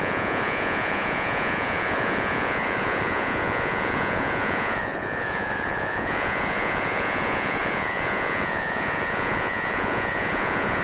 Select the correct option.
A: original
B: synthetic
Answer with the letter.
B